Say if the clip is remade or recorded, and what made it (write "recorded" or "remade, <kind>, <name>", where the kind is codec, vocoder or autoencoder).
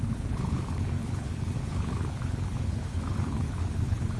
remade, codec, HILCodec